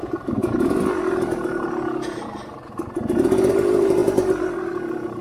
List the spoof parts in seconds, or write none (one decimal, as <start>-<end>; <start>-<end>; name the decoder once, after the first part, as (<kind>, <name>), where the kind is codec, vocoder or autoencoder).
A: 0.0-0.4 (vocoder, BigVGAN v2); 3.5-5.2